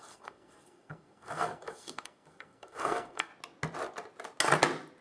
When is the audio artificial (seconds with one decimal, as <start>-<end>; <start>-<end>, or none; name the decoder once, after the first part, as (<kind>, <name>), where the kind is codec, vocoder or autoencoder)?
0.0-3.3 (codec, SNAC)